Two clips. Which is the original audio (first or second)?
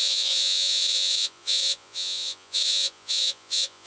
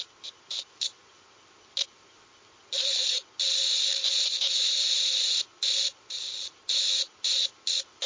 second